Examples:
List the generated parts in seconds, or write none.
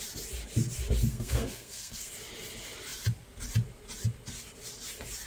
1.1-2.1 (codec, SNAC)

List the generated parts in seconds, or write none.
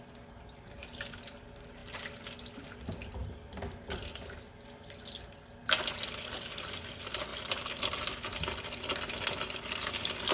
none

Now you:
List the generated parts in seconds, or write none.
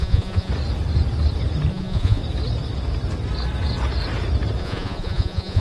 0.0-0.5 (vocoder, Vocos); 1.7-2.2; 4.6-5.6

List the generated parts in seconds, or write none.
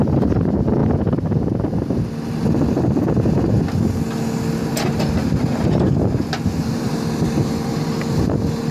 0.8-1.7 (vocoder, BigVGAN v2); 4.6-6.9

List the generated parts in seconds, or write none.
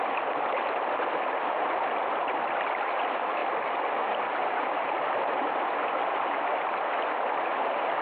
none